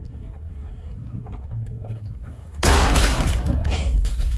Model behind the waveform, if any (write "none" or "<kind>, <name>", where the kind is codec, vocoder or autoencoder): codec, SNAC